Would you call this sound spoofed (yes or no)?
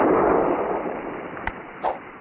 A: no